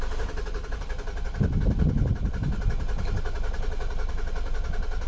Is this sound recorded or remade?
recorded